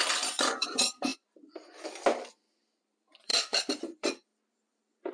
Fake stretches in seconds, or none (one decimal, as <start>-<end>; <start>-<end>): 0.0-4.3